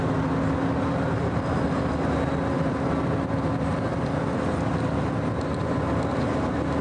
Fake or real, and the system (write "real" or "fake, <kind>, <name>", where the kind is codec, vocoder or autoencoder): real